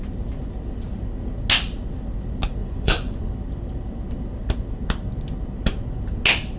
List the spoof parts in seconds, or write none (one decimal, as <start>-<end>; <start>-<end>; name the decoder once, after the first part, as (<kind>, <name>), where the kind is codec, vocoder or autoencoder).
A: 2.6-3.3 (vocoder, Vocos)